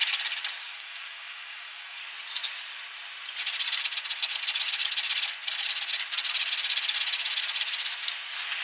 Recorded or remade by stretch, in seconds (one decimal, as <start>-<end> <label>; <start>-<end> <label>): 0.0-0.6 recorded; 0.6-2.0 remade; 2.0-8.6 recorded